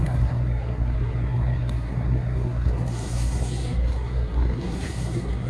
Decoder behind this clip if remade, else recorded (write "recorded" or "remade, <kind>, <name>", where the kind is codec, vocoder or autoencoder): remade, codec, SNAC